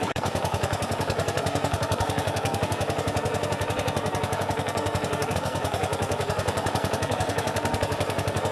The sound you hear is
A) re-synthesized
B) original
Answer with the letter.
A